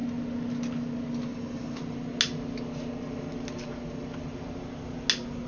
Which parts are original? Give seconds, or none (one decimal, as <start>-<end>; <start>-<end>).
0.0-5.5